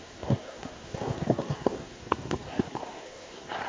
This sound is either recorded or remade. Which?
remade